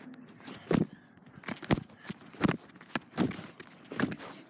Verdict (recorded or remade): recorded